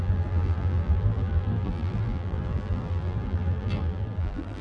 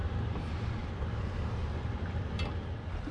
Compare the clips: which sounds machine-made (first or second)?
first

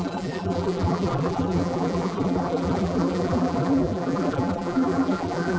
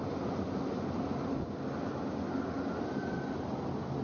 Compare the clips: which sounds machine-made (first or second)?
first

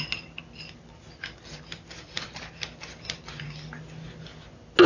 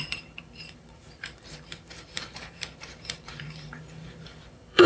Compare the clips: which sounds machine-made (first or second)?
second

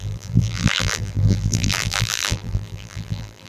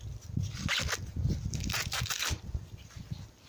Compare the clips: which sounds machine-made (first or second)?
first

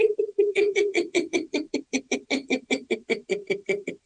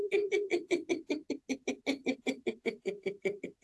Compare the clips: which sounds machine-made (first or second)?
first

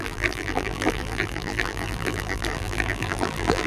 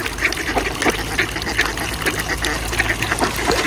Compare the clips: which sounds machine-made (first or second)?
first